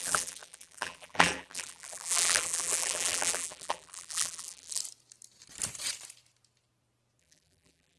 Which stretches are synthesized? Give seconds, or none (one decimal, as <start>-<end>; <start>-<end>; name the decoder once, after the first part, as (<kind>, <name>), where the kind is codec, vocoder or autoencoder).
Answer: 0.0-4.8 (vocoder, BigVGAN v2); 7.2-8.0